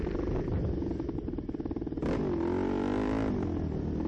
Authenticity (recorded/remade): recorded